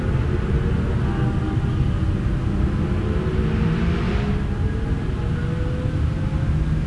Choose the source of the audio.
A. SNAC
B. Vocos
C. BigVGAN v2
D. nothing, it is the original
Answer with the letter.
D